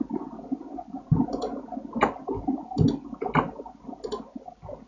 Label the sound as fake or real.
real